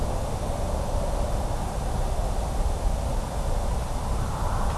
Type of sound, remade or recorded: recorded